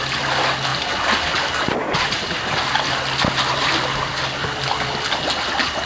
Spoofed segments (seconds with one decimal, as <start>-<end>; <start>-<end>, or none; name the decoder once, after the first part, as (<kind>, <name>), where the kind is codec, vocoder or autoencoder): none